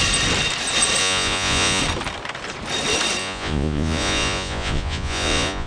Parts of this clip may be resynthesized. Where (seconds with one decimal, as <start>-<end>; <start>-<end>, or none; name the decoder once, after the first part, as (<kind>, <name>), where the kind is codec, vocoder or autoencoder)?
1.0-1.8 (vocoder, Vocos); 3.2-5.7